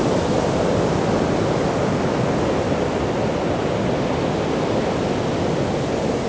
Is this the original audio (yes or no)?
yes